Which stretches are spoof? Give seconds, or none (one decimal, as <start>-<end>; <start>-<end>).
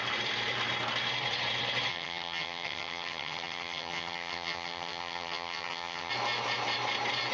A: 1.9-6.1